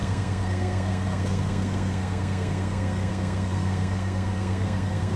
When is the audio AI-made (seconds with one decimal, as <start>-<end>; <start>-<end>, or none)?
0.0-5.2